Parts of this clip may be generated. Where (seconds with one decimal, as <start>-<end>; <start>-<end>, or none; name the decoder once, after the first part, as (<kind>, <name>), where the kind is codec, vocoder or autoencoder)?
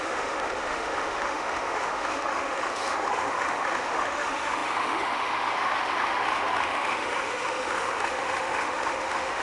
0.0-9.4 (autoencoder, DAC-VAE)